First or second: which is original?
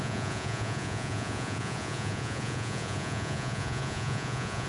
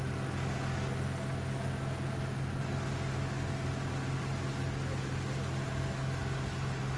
second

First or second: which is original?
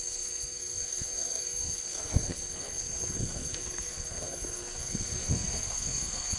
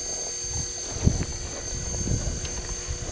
second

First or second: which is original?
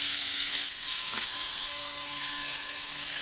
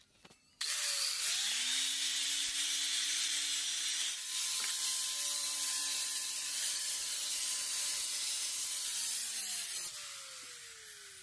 second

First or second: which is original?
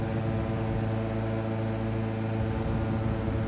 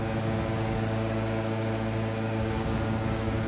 first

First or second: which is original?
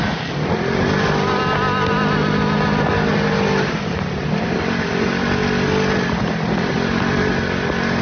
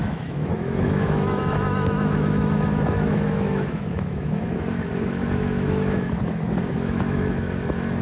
first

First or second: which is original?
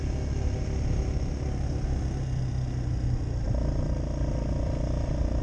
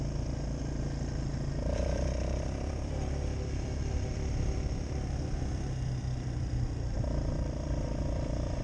first